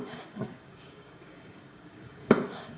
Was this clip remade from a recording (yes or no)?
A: yes